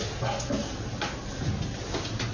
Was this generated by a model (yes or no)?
no